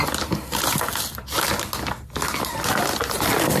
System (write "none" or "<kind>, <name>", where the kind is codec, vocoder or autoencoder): none